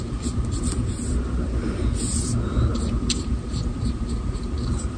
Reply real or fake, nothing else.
real